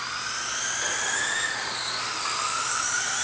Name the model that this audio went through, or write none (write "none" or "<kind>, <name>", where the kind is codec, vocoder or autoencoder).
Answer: none